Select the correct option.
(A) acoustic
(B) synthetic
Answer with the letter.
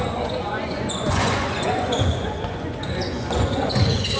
B